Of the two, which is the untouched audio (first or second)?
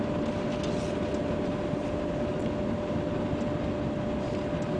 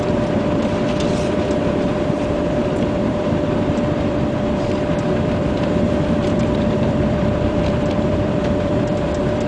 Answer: first